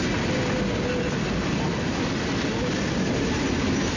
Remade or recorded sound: recorded